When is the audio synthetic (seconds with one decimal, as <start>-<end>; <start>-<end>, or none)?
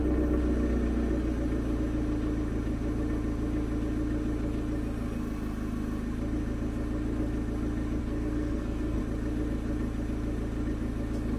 8.0-9.0